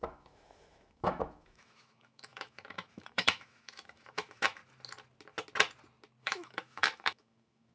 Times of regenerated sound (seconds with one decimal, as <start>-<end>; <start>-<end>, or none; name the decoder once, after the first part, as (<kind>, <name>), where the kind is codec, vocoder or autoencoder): 0.0-4.6 (autoencoder, DAC-VAE); 6.2-7.7